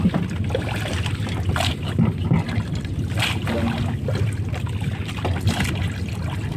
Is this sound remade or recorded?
recorded